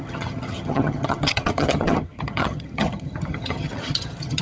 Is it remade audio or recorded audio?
remade